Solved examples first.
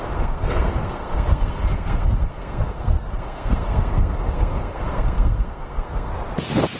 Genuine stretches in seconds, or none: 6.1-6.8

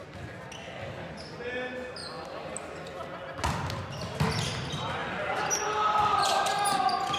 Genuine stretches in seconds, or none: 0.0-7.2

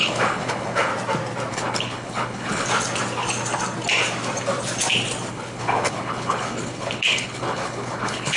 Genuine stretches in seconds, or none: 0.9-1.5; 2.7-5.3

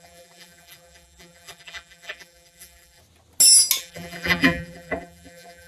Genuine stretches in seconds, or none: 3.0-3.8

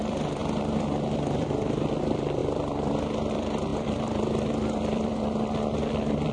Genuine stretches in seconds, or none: none

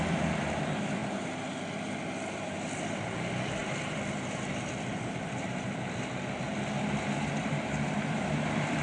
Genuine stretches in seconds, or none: 1.0-2.3; 6.5-7.3